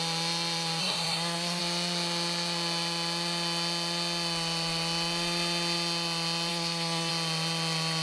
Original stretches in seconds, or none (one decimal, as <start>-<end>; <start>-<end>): 0.0-0.8; 1.6-6.5; 7.1-8.0